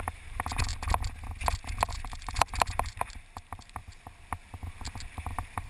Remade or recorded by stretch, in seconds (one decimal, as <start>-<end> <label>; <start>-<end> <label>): 0.0-0.7 remade; 0.7-1.9 recorded; 1.9-3.8 remade; 3.8-5.1 recorded; 5.1-5.7 remade